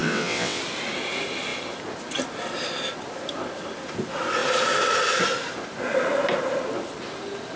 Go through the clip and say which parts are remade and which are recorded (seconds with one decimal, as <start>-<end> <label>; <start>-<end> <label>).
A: 0.0-0.6 remade; 0.6-7.6 recorded